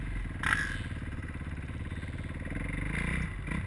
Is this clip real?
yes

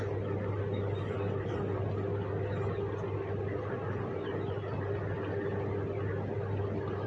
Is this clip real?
yes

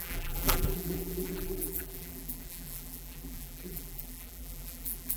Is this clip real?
no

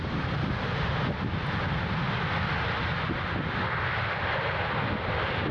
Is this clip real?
yes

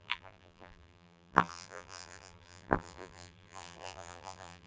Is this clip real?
no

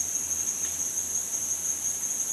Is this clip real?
yes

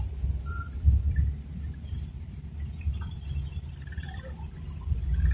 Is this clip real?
no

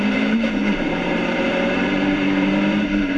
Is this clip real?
no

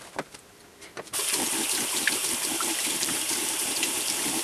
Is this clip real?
no